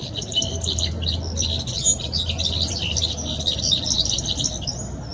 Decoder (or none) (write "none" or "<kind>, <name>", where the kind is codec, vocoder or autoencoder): none